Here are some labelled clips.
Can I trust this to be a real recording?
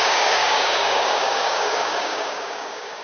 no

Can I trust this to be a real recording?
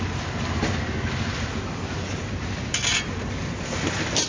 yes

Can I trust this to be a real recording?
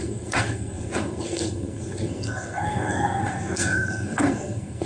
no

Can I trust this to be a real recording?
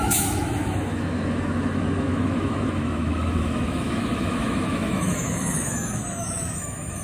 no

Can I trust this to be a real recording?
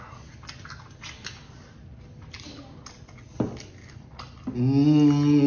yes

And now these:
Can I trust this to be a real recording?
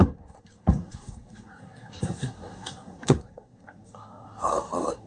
no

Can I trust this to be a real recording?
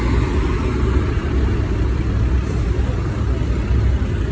yes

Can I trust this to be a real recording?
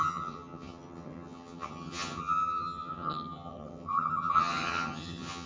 no